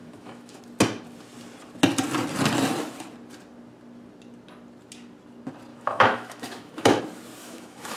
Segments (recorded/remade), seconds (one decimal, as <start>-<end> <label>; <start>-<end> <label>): 0.0-0.6 remade; 0.6-5.7 recorded; 5.7-7.0 remade; 7.0-7.4 recorded; 7.4-8.0 remade

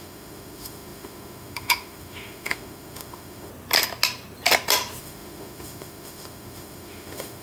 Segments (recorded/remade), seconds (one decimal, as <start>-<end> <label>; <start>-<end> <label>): 0.0-3.5 remade; 3.5-5.0 recorded; 5.0-7.4 remade

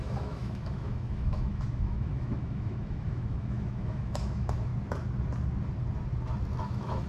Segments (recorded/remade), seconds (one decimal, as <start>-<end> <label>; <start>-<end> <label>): 0.0-4.7 remade; 4.7-6.6 recorded; 6.6-7.1 remade

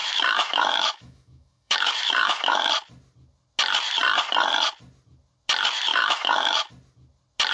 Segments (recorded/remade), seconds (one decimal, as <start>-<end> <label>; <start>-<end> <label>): 0.0-2.7 remade; 2.7-5.9 recorded; 5.9-6.7 remade; 6.7-7.5 recorded

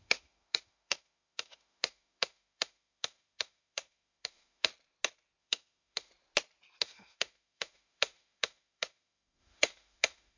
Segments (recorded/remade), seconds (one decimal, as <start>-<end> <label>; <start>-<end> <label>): 0.0-4.7 remade; 4.7-5.4 recorded; 5.4-6.1 remade; 6.1-6.8 recorded; 6.8-10.4 remade

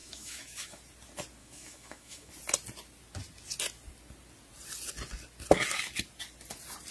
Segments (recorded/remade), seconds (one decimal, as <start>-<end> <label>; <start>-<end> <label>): 0.0-0.8 remade; 0.8-1.4 recorded; 1.4-2.3 remade; 2.3-6.9 recorded

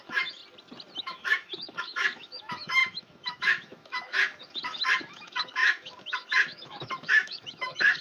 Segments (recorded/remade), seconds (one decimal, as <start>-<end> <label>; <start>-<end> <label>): 0.0-0.4 remade; 0.4-1.0 recorded; 1.0-8.0 remade